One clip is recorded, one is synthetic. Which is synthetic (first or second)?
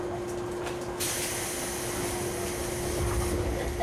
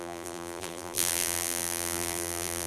second